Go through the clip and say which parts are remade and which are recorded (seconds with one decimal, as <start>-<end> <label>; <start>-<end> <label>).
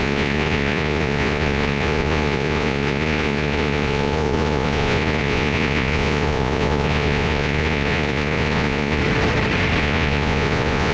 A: 0.0-9.0 remade; 9.0-9.8 recorded; 9.8-10.9 remade